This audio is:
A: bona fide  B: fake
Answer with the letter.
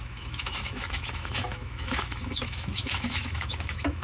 B